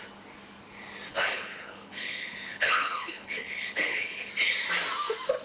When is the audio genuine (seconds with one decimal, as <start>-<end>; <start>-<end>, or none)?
0.0-1.1; 4.3-5.4

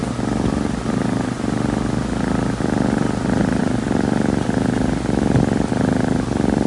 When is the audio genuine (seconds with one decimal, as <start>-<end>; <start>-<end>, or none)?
0.0-6.7

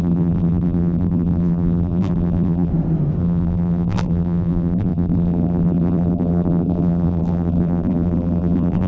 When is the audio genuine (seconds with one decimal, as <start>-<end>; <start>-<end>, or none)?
2.7-3.2

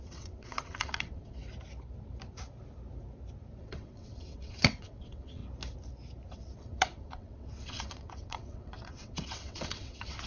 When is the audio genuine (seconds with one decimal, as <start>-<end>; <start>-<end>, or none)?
1.4-3.6; 5.4-6.3

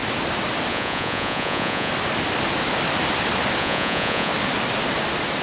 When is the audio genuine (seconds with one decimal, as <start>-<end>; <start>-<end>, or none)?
0.0-0.7; 1.9-3.6; 4.3-5.4

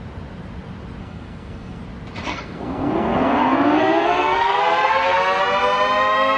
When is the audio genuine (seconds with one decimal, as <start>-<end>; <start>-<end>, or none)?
0.0-1.0; 1.8-2.3; 5.4-6.4